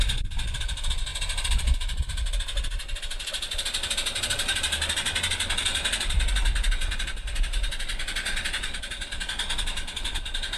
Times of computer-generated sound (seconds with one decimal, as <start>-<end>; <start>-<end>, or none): none